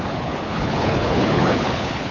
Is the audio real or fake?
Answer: fake